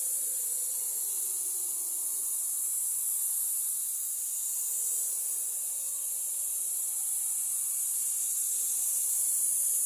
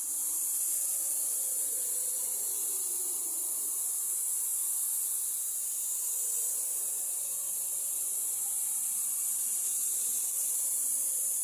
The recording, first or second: first